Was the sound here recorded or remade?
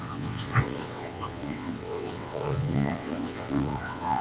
remade